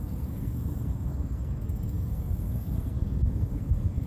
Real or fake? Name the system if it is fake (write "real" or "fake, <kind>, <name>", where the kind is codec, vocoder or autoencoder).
fake, codec, SNAC